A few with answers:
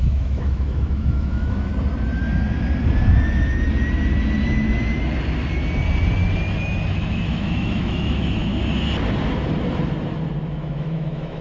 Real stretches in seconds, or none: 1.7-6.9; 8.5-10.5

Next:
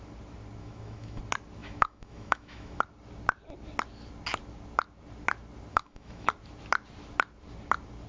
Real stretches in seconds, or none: 0.0-0.6; 1.2-1.6; 2.8-5.7; 6.3-8.1

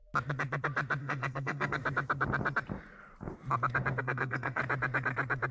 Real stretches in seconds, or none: 0.0-1.0; 1.8-4.0; 4.6-5.5